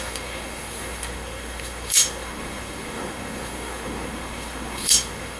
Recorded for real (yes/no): no